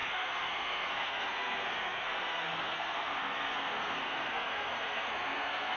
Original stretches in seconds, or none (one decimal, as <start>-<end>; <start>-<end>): none